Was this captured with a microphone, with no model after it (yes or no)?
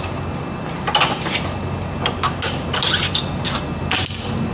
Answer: yes